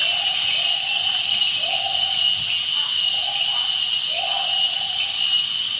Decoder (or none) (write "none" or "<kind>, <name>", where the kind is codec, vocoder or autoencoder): none